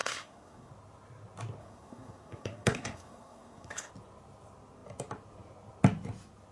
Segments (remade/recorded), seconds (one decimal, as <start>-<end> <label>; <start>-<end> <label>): 0.0-0.7 remade; 0.7-1.6 recorded; 1.6-3.9 remade; 3.9-6.5 recorded